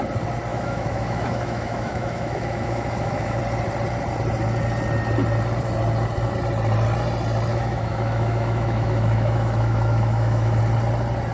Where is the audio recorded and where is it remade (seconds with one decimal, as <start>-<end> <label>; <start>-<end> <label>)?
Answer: 0.0-0.5 recorded; 0.5-3.4 remade; 3.4-7.5 recorded; 7.5-10.6 remade; 10.6-11.3 recorded